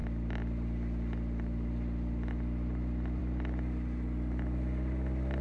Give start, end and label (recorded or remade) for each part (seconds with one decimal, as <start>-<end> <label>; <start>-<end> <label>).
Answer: 0.0-5.4 recorded